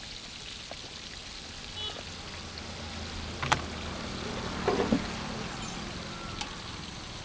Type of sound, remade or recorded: recorded